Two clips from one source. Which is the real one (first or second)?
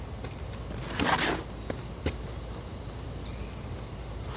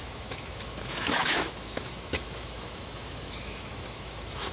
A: first